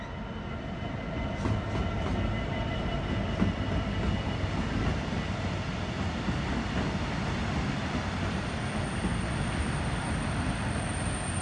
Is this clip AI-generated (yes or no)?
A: no